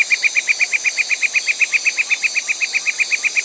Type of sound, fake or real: real